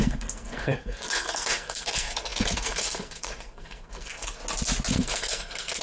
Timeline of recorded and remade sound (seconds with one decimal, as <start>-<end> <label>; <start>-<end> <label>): 0.0-4.4 remade; 4.4-4.9 recorded; 4.9-5.8 remade

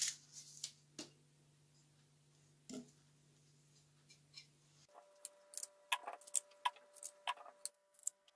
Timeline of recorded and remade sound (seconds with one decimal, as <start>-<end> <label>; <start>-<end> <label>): 0.0-7.7 recorded; 7.7-8.4 remade

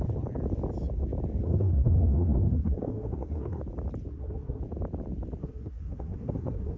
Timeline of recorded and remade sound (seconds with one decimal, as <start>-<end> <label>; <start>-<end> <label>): 0.0-1.4 recorded; 1.4-3.6 remade; 3.6-4.1 recorded; 4.1-4.6 remade; 4.6-5.4 recorded; 5.4-6.8 remade

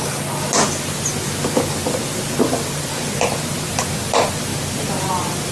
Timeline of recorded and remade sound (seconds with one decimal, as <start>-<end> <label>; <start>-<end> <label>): 0.0-5.5 recorded

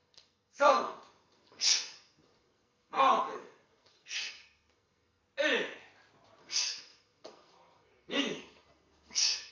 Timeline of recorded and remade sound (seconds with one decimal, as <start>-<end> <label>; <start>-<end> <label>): 0.0-5.2 remade; 5.2-6.4 recorded; 6.4-9.5 remade

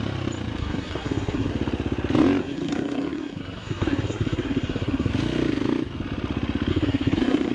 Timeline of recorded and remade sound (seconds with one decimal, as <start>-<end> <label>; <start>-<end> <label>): 0.0-0.6 recorded; 0.6-1.5 remade; 1.5-2.4 recorded; 2.4-5.1 remade; 5.1-6.7 recorded; 6.7-7.5 remade

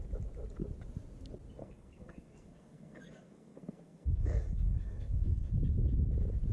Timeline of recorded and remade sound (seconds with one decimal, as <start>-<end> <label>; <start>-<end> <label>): 0.0-1.6 recorded; 1.6-5.5 remade; 5.5-6.5 recorded